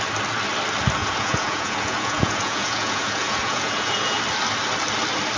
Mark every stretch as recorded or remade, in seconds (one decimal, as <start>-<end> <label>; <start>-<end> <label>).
0.0-1.0 recorded; 1.0-4.2 remade; 4.2-5.4 recorded